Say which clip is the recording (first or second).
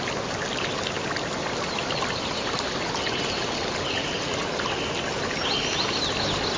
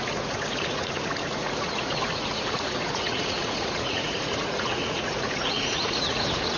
first